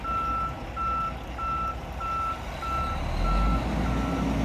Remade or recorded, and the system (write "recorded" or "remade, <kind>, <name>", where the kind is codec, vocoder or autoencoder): recorded